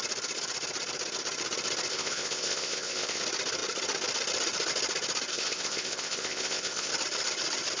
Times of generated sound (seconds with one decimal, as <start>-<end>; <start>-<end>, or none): 1.9-3.2; 5.3-6.9